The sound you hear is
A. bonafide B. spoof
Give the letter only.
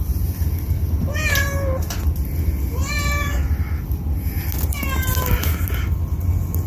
A